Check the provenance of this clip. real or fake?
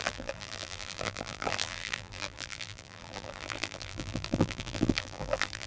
fake